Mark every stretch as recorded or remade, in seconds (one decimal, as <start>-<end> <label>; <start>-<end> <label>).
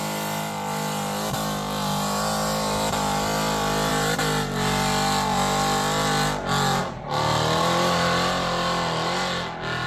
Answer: 0.0-9.9 recorded